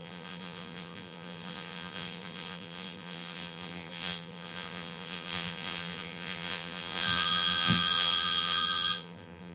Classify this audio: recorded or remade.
remade